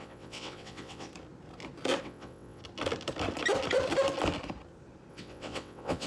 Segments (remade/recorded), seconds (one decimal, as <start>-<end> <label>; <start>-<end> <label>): 0.0-1.1 remade; 1.1-2.0 recorded; 2.0-2.6 remade; 2.6-5.1 recorded; 5.1-6.1 remade